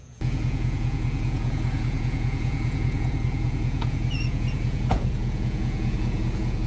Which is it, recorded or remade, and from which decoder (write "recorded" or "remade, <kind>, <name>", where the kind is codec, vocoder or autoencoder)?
remade, vocoder, Vocos